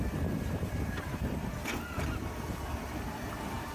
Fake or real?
fake